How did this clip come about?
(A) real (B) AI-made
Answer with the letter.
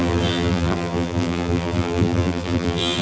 B